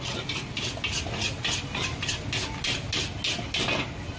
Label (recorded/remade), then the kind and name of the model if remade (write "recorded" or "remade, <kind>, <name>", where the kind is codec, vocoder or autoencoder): recorded